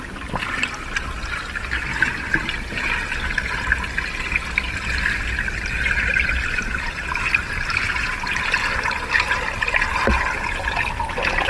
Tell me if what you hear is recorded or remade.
recorded